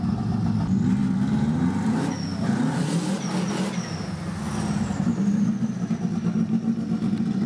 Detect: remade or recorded recorded